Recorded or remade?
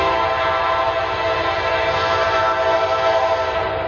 recorded